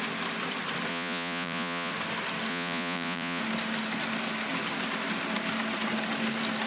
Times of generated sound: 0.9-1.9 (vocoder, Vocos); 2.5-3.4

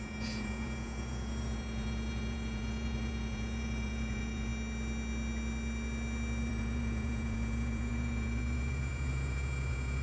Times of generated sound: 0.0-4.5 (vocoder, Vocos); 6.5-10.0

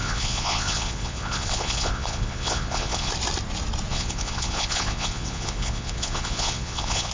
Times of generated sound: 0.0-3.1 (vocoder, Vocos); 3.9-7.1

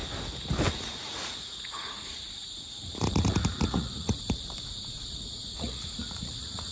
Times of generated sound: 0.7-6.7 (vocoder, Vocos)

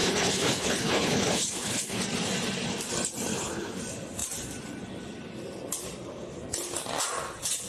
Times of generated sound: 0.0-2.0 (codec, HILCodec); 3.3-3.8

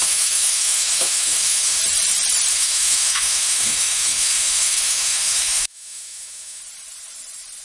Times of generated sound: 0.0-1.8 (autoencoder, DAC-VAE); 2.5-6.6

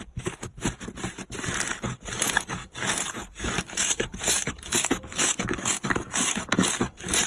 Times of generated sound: 0.0-0.5 (codec, DAC); 1.7-7.3

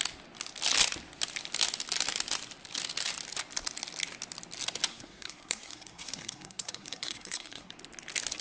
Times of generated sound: 4.9-7.7 (codec, SNAC)